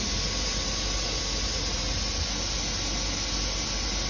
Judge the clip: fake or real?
real